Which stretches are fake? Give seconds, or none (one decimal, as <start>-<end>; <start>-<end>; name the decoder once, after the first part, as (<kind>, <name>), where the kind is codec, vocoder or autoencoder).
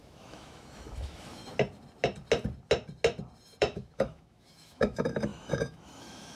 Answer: 0.0-1.4 (autoencoder, DAC-VAE); 3.6-6.4